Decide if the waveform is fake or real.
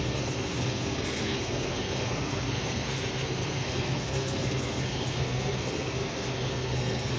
fake